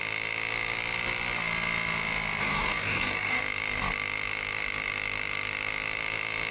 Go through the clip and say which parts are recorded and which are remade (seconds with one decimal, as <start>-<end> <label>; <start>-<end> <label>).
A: 0.0-2.4 recorded; 2.4-3.4 remade; 3.4-6.5 recorded